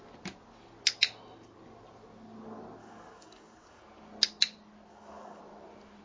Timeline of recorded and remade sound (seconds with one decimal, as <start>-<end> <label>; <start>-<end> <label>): 0.0-2.8 recorded; 2.8-3.8 remade; 3.8-4.9 recorded; 4.9-5.4 remade; 5.4-6.0 recorded